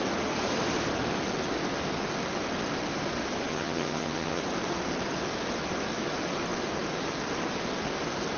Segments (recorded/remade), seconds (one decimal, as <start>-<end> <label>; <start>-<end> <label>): 0.0-3.5 recorded; 3.5-4.4 remade; 4.4-8.4 recorded